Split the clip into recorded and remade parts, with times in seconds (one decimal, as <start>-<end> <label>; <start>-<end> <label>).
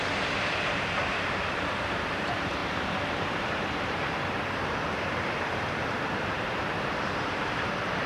0.0-8.1 remade